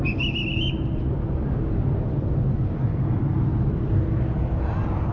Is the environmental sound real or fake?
real